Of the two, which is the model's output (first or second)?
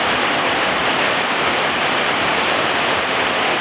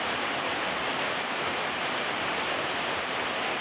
second